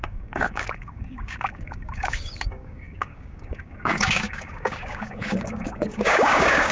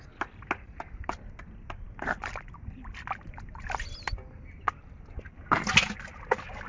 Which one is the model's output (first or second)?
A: first